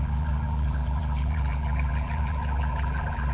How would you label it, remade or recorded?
remade